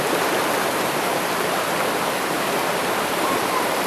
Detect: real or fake real